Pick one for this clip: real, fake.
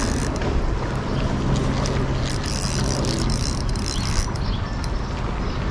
real